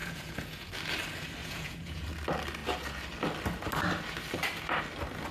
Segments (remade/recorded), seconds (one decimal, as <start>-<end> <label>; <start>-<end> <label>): 0.0-0.7 remade; 0.7-1.4 recorded; 1.4-2.1 remade; 2.1-5.3 recorded